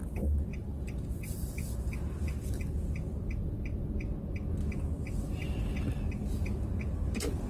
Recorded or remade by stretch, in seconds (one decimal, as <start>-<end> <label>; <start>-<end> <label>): 0.0-0.5 recorded; 0.5-2.6 remade; 2.6-7.5 recorded